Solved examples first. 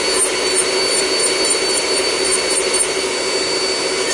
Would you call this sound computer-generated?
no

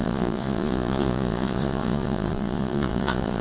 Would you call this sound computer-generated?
yes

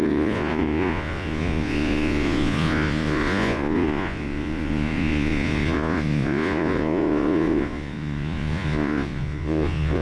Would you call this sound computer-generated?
yes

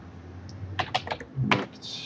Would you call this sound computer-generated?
no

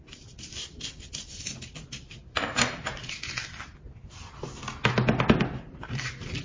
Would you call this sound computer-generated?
no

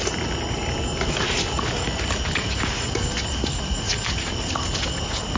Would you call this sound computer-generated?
no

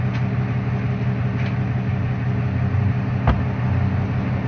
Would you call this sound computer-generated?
no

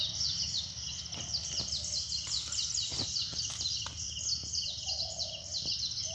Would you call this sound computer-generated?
no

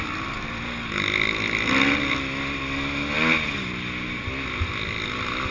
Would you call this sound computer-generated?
no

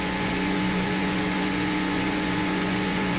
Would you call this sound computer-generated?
yes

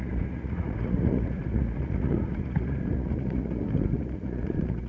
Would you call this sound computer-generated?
yes